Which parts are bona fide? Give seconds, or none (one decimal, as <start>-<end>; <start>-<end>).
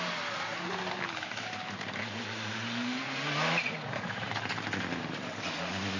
0.0-6.0